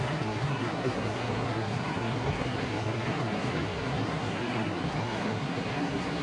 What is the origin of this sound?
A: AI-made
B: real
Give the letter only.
A